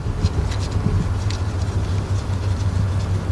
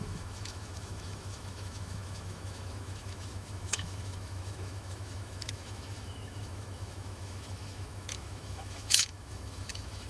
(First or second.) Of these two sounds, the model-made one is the second